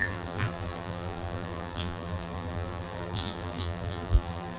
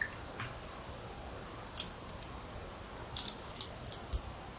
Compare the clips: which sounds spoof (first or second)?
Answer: first